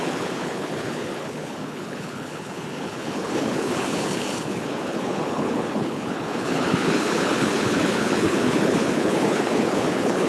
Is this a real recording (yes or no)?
no